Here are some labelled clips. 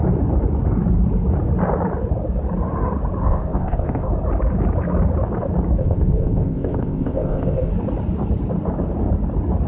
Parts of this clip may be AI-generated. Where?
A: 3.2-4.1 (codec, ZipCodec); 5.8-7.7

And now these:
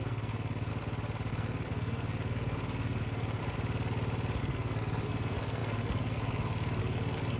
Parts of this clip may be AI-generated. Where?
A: 0.0-0.7 (codec, SNAC); 1.3-3.4; 4.4-7.4

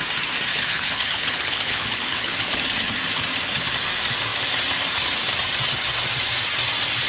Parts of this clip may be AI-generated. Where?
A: 0.5-2.6 (codec, HILCodec)

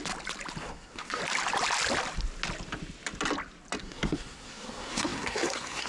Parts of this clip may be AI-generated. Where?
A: 0.6-1.2 (codec, SNAC); 3.8-5.9

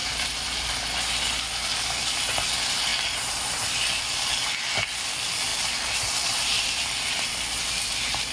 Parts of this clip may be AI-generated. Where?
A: 0.0-0.7 (vocoder, BigVGAN v2); 5.5-7.2

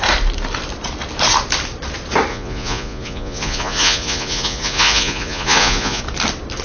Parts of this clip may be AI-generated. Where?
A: 2.3-6.0 (vocoder, Vocos)